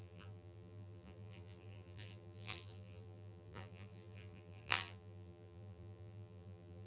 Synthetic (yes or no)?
yes